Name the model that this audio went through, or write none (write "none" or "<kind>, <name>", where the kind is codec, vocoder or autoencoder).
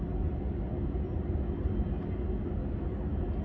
none